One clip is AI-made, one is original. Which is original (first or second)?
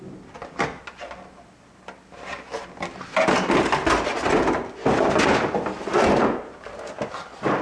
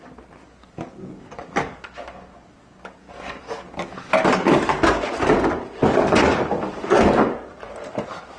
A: first